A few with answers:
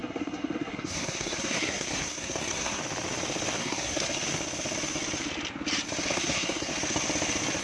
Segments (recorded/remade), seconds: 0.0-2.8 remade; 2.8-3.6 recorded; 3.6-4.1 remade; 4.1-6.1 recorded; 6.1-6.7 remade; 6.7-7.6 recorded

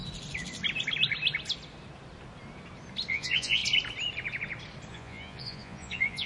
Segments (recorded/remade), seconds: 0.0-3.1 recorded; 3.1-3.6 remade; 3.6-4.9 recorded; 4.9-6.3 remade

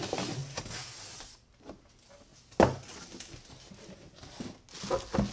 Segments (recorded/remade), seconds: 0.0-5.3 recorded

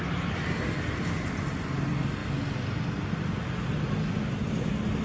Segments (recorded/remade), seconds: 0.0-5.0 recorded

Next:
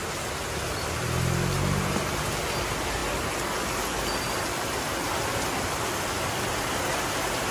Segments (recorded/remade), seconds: 0.0-7.5 recorded